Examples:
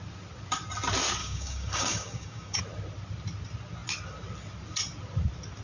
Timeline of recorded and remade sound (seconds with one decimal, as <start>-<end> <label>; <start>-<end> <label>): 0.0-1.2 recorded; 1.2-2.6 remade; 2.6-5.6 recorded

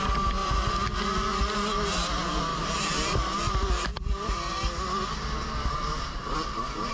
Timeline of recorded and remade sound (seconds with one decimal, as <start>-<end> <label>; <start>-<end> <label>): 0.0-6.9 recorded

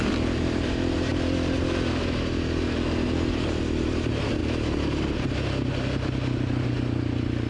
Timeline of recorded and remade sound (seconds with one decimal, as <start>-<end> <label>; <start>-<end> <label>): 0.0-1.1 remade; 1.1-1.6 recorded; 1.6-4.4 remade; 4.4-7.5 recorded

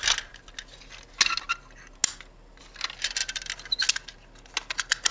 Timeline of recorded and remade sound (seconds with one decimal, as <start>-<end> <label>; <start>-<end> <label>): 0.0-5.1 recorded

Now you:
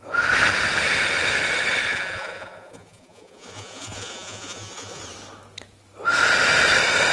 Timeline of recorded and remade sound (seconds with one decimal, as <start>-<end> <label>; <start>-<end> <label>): 0.0-1.9 recorded; 1.9-5.0 remade; 5.0-7.1 recorded